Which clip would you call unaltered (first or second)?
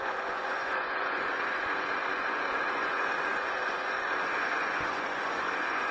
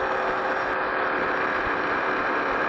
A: second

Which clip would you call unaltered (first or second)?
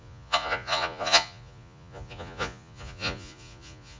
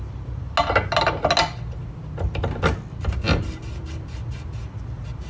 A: second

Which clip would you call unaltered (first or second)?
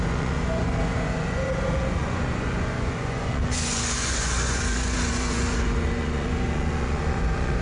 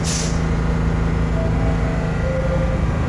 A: second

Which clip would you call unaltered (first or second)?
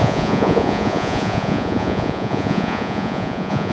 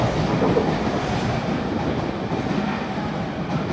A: second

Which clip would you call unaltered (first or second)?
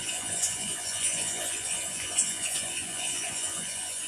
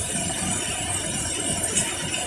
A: second